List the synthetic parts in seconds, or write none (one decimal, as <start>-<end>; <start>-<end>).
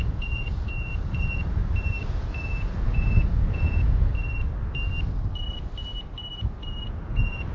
0.0-1.6; 2.1-4.1; 6.6-7.5